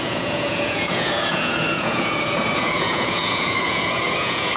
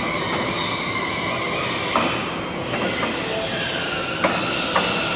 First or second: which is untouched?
second